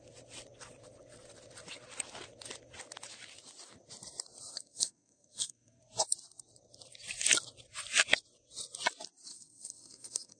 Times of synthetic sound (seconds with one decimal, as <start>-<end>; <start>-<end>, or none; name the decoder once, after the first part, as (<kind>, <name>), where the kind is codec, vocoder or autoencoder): 4.5-5.8 (codec, SNAC); 9.3-10.4